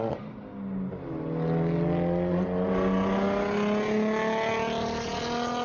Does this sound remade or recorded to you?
recorded